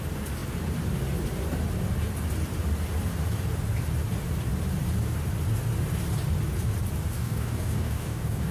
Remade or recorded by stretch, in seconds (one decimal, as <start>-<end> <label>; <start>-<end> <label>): 0.0-7.1 recorded; 7.1-8.5 remade